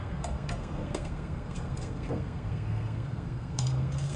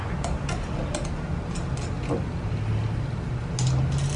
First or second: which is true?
second